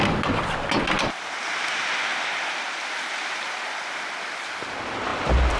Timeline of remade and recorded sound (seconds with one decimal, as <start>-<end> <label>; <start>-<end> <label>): 0.0-5.6 recorded